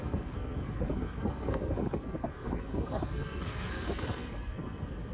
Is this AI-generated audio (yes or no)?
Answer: yes